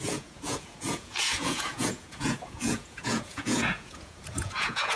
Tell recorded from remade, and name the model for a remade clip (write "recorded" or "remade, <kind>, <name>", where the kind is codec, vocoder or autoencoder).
remade, vocoder, Vocos